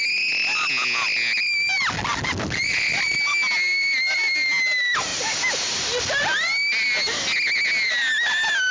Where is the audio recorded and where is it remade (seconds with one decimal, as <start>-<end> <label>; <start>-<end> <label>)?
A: 0.0-8.7 recorded